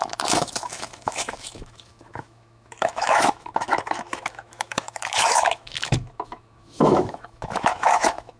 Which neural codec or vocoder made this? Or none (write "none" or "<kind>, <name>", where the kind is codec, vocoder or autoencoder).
autoencoder, DAC-VAE